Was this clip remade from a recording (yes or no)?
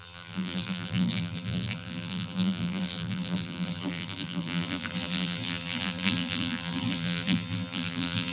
yes